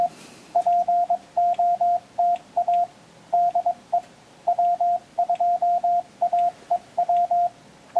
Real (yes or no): yes